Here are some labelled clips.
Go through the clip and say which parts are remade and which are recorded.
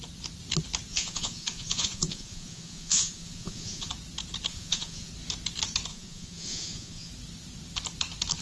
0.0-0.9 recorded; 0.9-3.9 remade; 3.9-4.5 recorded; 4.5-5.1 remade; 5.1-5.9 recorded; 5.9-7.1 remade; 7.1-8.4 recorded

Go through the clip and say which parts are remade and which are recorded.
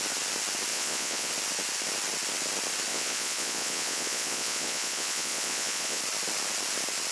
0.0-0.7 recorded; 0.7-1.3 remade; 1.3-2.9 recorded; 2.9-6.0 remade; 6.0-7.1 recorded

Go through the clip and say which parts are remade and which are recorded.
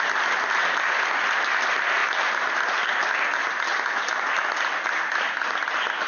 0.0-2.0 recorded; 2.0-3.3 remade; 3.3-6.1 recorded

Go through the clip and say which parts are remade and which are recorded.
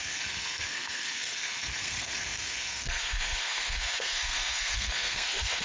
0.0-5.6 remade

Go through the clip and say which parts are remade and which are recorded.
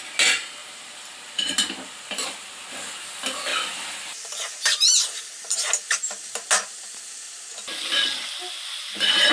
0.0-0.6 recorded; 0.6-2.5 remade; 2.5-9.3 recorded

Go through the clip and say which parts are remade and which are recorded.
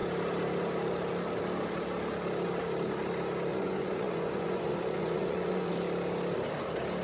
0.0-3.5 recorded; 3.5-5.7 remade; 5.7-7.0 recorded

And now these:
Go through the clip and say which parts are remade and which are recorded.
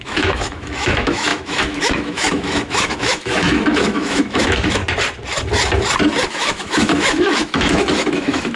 0.0-4.8 remade; 4.8-6.3 recorded; 6.3-8.6 remade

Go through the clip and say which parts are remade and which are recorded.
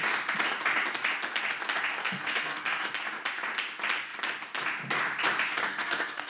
0.0-2.0 recorded; 2.0-2.9 remade; 2.9-5.7 recorded; 5.7-6.3 remade